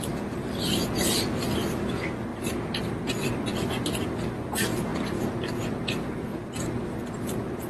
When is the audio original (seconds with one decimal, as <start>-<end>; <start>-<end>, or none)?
0.0-7.7